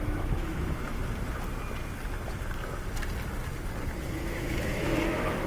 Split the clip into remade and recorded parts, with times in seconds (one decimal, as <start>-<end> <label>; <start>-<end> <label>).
0.0-1.0 remade; 1.0-4.2 recorded; 4.2-5.5 remade